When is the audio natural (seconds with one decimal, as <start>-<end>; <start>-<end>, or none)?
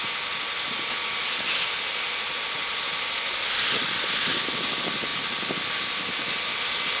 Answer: 0.0-7.0